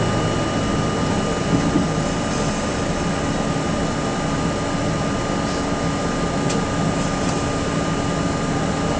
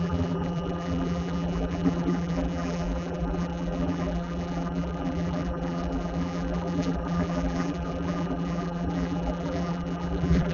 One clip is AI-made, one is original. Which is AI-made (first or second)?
second